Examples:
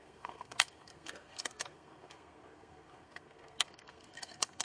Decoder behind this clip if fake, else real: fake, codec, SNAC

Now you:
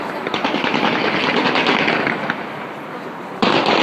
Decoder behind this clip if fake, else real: real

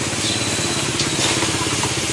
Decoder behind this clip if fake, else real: real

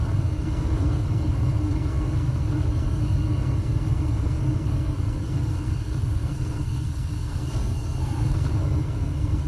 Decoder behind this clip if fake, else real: fake, codec, SNAC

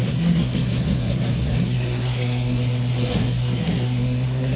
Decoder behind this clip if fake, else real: fake, codec, SNAC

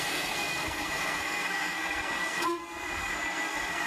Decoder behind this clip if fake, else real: fake, codec, SNAC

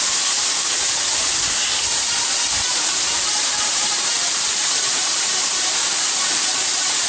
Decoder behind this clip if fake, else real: real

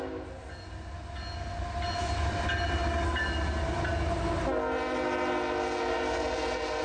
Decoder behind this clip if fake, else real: real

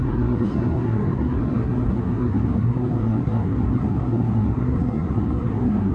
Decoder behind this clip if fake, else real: fake, codec, SNAC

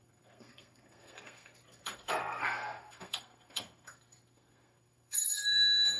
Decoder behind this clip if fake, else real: fake, codec, SNAC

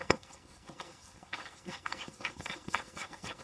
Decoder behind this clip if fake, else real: fake, codec, SNAC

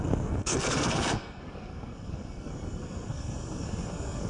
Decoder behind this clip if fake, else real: fake, codec, SNAC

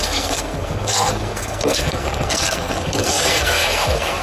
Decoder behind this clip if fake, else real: fake, codec, SNAC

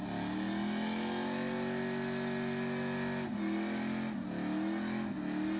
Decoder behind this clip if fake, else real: real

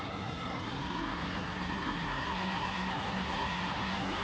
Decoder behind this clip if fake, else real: fake, codec, SNAC